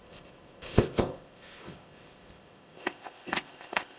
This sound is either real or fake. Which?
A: fake